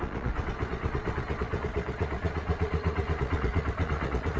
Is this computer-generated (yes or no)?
yes